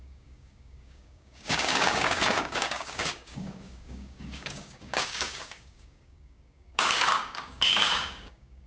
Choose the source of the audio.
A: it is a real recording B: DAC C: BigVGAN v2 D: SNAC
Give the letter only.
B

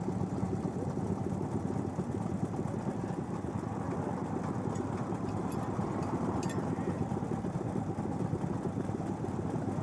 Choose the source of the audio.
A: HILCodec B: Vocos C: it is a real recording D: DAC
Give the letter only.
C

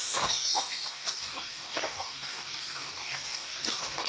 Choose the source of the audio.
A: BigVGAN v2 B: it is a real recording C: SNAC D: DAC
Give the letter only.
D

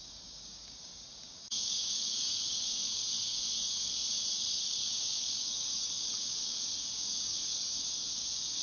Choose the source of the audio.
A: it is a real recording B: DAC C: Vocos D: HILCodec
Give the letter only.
B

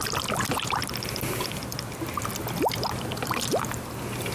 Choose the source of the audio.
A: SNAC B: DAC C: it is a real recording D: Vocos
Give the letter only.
C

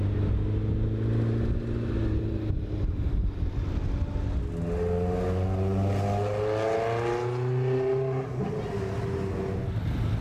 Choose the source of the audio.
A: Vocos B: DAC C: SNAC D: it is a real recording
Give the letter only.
D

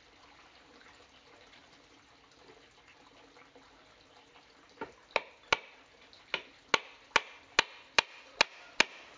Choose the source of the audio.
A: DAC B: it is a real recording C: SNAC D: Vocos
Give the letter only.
B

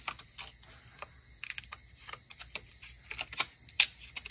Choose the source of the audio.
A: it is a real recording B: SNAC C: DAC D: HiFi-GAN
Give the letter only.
A